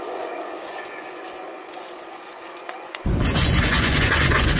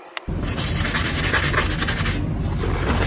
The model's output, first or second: first